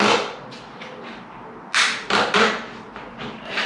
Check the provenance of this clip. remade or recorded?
recorded